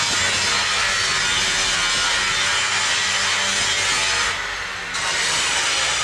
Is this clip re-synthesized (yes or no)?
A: no